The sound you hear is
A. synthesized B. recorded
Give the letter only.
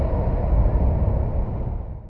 B